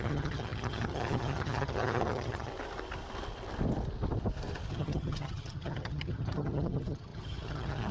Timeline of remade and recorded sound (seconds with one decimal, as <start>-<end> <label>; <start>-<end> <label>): 0.0-2.5 remade; 2.5-4.7 recorded; 4.7-7.9 remade